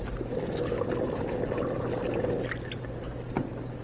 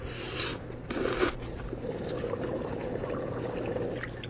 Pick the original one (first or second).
first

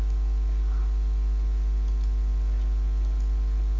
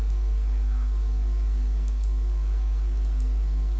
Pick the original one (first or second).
first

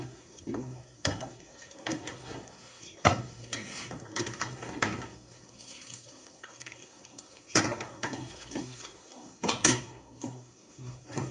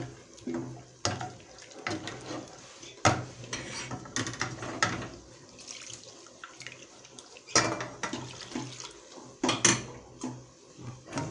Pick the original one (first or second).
second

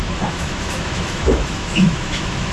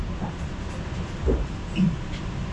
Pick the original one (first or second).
second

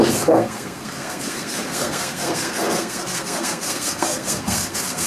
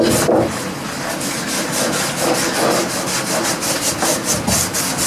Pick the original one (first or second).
second